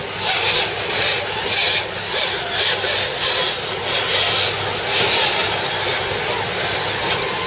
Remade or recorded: recorded